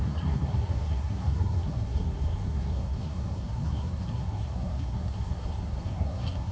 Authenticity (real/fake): fake